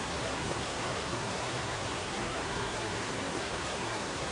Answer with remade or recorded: remade